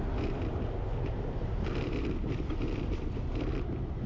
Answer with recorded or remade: recorded